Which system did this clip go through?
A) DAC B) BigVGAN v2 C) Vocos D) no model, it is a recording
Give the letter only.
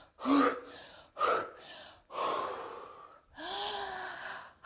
D